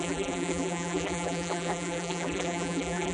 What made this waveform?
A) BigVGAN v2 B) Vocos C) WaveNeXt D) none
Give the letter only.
A